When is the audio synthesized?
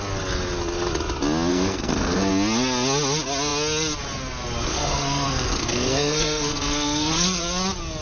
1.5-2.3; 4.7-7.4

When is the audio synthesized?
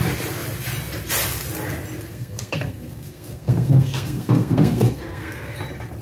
2.1-5.6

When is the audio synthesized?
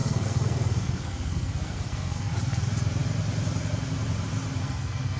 0.0-2.3; 4.6-5.2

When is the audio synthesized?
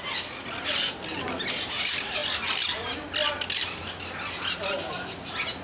none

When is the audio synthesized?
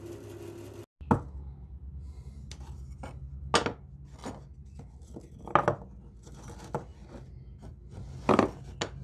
none